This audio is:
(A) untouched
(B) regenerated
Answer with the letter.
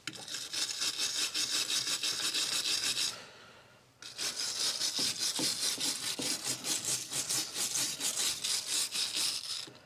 A